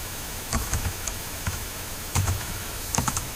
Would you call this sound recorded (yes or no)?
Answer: no